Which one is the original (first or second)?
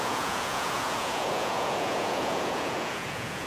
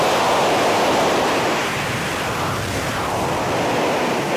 second